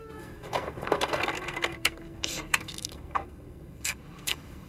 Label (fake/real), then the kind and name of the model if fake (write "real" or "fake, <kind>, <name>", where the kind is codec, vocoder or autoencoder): fake, codec, SNAC